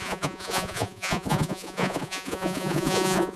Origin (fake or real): fake